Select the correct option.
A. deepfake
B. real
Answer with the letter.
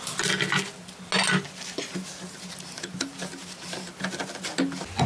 B